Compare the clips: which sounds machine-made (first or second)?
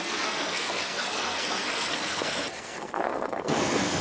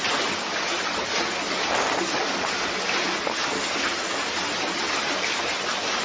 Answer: first